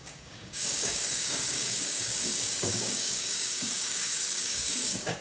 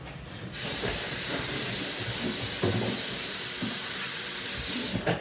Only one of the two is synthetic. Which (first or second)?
first